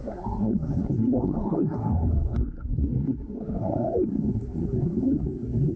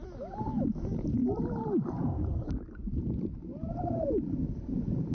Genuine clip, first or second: second